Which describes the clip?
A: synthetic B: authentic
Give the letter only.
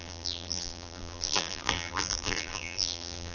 A